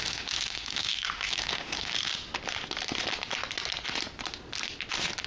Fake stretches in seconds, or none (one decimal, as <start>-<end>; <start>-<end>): 0.0-2.1